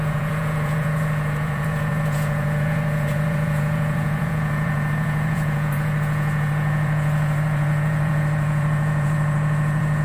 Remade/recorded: remade